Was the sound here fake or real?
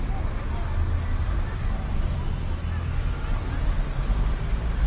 real